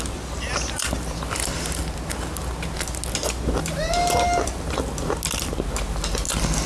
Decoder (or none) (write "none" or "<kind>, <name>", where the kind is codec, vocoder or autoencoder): none